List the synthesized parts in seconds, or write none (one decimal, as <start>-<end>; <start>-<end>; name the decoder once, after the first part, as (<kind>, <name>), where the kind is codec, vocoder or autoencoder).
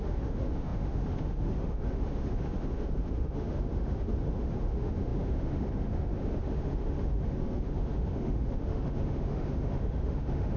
0.0-10.6 (autoencoder, DAC-VAE)